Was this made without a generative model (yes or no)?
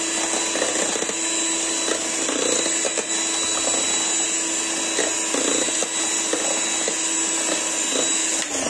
yes